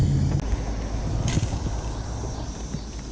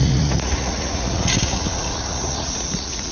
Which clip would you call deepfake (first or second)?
second